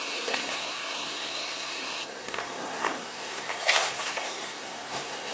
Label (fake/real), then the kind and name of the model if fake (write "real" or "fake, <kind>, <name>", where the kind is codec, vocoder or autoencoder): fake, codec, SNAC